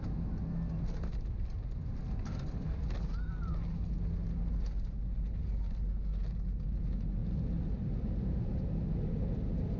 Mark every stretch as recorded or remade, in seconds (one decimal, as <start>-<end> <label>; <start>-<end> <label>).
0.0-9.8 recorded